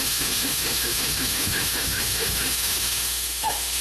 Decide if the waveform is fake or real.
fake